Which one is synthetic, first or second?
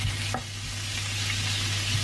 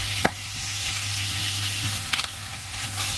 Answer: second